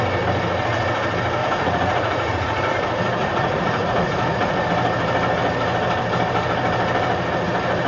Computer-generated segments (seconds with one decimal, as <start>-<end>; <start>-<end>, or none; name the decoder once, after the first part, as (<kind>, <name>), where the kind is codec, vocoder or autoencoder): 1.4-2.7 (vocoder, Vocos); 3.2-4.7